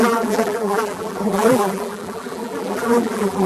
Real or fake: fake